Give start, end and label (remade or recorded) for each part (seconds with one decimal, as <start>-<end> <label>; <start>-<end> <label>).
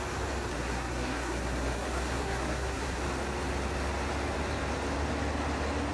0.0-0.5 recorded; 0.5-3.0 remade; 3.0-5.9 recorded